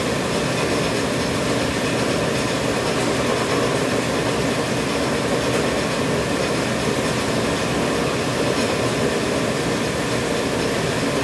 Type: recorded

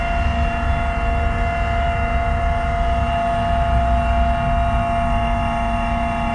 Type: recorded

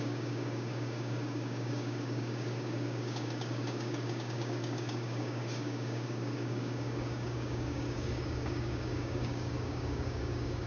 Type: remade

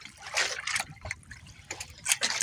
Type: recorded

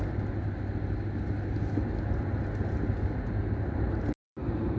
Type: recorded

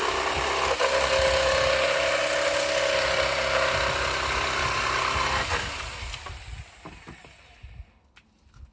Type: recorded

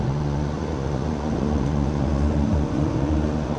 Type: remade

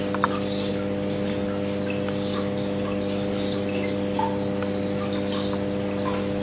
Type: recorded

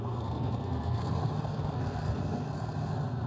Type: remade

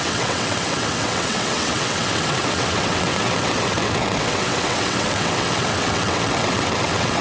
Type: remade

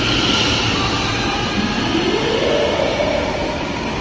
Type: recorded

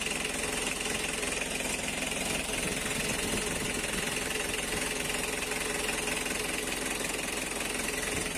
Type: recorded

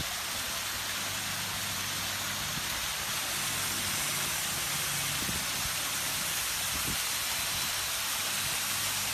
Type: recorded